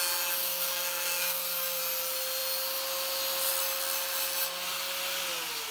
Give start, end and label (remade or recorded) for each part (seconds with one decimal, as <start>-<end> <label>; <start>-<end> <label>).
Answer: 0.0-0.4 recorded; 0.4-1.8 remade; 1.8-5.7 recorded